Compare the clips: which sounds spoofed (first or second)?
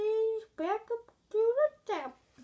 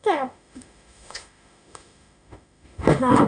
second